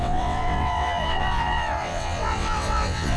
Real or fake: fake